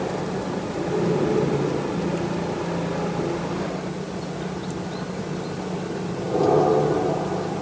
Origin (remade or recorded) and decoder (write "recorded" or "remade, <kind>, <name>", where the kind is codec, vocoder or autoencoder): recorded